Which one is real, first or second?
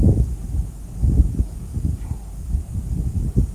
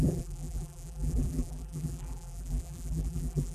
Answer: first